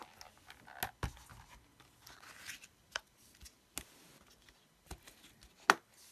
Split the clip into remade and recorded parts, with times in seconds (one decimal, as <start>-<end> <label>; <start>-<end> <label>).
0.0-6.1 recorded